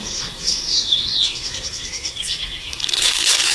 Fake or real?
fake